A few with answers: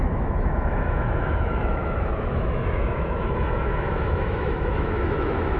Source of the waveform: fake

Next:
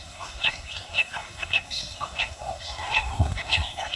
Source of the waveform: fake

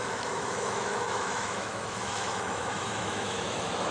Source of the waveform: fake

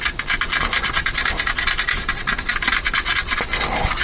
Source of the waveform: real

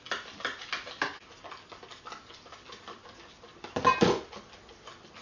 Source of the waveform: real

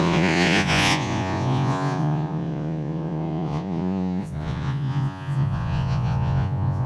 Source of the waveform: fake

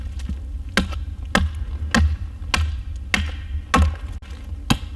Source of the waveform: real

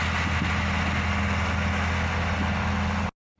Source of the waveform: real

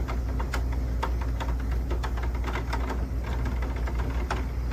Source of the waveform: real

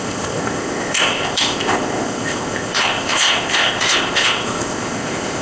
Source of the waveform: fake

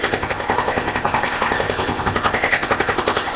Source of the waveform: fake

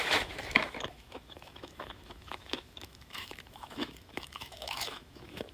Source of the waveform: fake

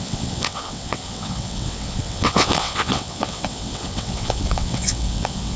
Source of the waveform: fake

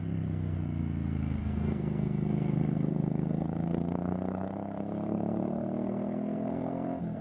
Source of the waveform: fake